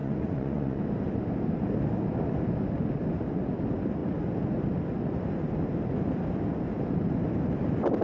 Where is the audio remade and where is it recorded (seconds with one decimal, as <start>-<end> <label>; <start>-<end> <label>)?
0.0-0.8 remade; 0.8-8.0 recorded